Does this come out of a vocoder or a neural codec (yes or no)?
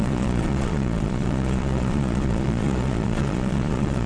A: yes